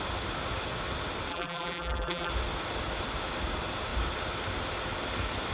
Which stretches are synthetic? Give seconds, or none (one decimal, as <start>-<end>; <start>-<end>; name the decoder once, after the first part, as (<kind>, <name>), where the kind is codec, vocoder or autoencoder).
1.3-2.3 (vocoder, BigVGAN v2)